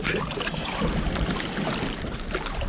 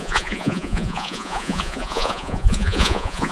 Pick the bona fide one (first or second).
first